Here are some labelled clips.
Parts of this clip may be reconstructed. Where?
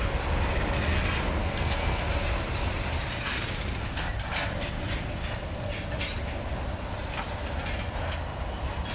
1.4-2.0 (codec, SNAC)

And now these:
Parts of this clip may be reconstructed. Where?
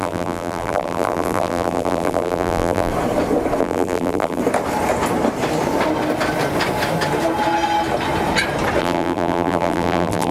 0.0-2.9 (vocoder, BigVGAN v2); 3.6-4.4; 8.8-10.3